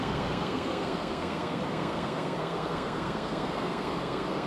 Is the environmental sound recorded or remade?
remade